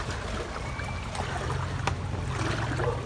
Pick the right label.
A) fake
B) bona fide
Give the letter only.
B